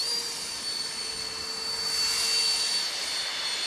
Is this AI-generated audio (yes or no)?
no